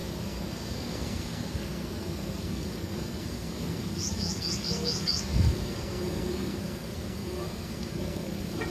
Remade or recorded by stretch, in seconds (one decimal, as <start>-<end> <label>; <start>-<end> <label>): 0.0-8.7 remade